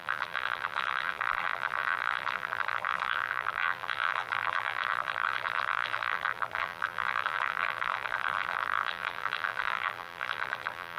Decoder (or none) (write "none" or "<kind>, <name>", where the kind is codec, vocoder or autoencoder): vocoder, BigVGAN v2